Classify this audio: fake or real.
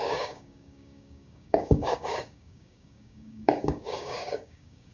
fake